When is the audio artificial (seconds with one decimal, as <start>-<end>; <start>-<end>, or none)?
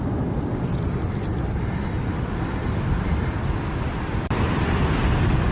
none